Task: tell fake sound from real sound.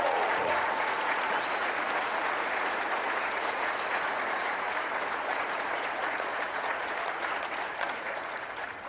fake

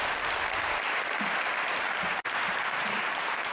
real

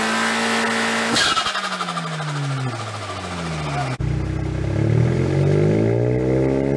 real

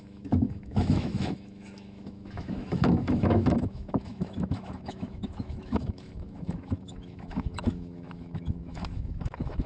fake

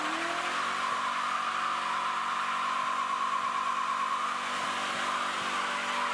real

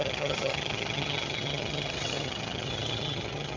fake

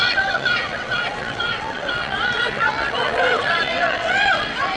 fake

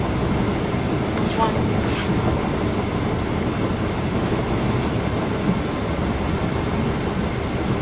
real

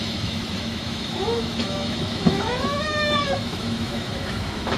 fake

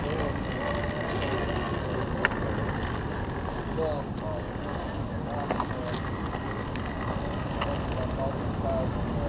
real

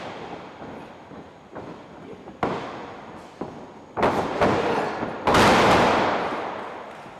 real